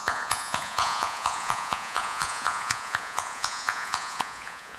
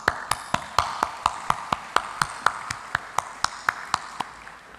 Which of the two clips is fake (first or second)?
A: first